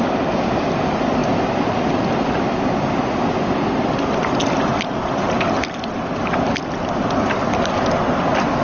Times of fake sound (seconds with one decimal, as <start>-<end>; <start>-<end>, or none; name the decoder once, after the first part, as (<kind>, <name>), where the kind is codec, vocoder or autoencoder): none